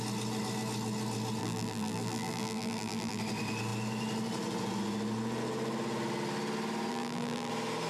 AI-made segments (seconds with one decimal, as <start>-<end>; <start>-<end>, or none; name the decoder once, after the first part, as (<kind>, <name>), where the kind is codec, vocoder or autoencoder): 1.4-3.2 (vocoder, BigVGAN v2); 6.9-7.5